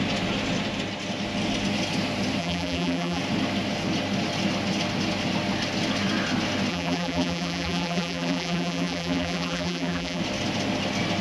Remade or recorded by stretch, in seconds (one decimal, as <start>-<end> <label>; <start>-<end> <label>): 0.0-2.4 recorded; 2.4-3.2 remade; 3.2-6.7 recorded; 6.7-10.2 remade; 10.2-11.2 recorded